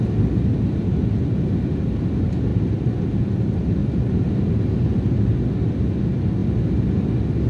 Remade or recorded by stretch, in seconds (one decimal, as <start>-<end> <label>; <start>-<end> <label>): 0.0-2.5 recorded; 2.5-3.2 remade; 3.2-3.8 recorded; 3.8-4.3 remade; 4.3-6.4 recorded; 6.4-7.1 remade; 7.1-7.5 recorded